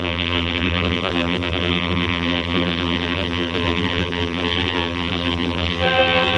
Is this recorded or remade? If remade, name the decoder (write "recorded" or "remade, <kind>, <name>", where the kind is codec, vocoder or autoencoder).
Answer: remade, vocoder, BigVGAN v2